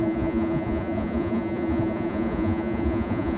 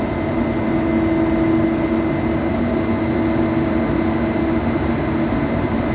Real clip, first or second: second